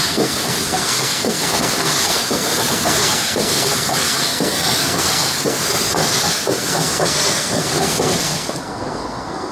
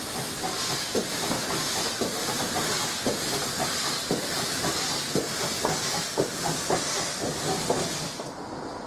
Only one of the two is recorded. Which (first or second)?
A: second